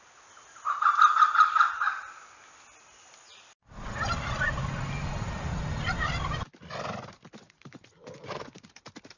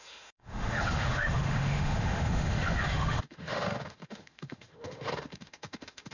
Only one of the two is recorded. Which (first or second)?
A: first